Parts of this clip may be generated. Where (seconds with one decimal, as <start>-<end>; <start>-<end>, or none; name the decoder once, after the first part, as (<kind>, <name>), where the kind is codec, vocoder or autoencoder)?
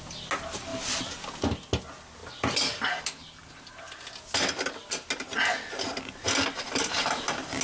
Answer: none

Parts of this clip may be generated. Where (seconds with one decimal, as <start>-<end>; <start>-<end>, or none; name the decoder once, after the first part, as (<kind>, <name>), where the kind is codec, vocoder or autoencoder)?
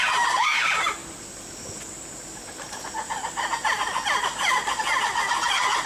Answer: none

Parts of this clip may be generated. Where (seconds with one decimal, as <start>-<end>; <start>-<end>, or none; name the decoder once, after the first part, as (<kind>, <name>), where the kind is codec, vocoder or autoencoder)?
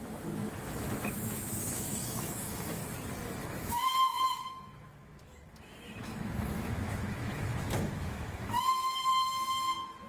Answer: 0.0-2.8 (autoencoder, DAC-VAE); 3.4-10.1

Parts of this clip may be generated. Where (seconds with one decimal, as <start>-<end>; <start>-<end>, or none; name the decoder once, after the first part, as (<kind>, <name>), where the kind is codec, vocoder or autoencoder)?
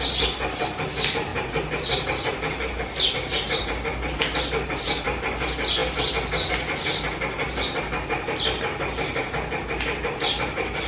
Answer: none